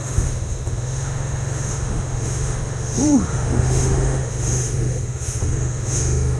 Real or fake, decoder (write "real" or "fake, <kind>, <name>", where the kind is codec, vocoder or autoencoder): fake, autoencoder, DAC-VAE